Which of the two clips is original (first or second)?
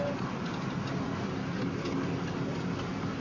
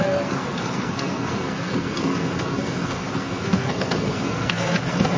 first